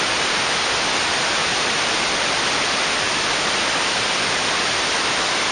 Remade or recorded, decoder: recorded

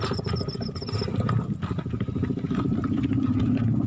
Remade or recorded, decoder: remade, vocoder, BigVGAN v2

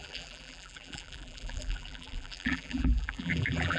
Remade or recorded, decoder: remade, vocoder, BigVGAN v2